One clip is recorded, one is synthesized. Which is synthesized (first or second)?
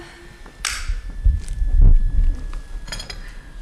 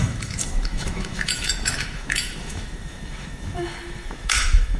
second